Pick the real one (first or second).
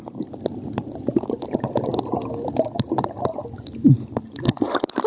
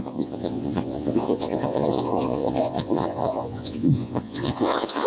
first